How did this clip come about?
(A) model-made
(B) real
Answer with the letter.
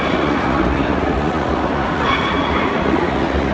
A